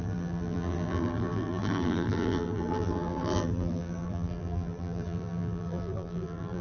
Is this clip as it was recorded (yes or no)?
no